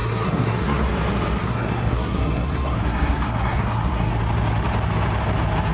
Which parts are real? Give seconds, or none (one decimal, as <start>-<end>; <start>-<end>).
0.9-1.4; 4.1-5.7